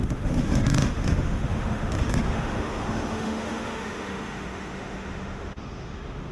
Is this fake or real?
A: fake